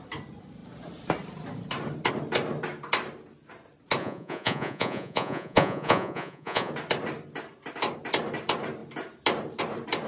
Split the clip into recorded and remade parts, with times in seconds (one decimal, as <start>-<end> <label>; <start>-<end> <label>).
0.0-4.0 recorded; 4.0-6.7 remade; 6.7-10.1 recorded

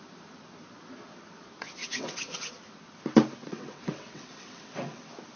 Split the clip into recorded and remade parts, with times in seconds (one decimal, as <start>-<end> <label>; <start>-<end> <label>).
0.0-1.8 recorded; 1.8-2.5 remade; 2.5-3.4 recorded; 3.4-5.0 remade; 5.0-5.4 recorded

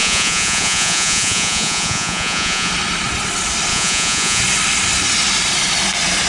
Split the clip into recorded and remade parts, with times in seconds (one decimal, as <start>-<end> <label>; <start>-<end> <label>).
0.0-2.7 remade; 2.7-3.7 recorded; 3.7-4.4 remade; 4.4-6.3 recorded

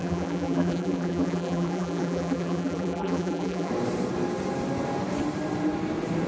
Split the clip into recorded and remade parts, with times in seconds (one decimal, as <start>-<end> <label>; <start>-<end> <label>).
0.0-3.7 remade; 3.7-6.3 recorded

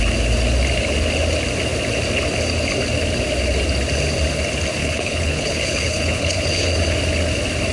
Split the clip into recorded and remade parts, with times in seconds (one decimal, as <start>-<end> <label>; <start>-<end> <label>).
0.0-4.8 recorded; 4.8-6.7 remade; 6.7-7.7 recorded

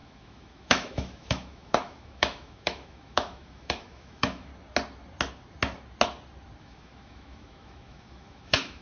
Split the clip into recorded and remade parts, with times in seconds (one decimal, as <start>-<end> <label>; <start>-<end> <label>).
0.0-4.5 remade; 4.5-6.6 recorded; 6.6-8.8 remade

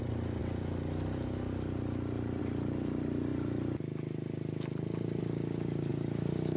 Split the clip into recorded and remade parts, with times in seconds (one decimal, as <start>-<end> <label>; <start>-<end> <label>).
0.0-6.6 recorded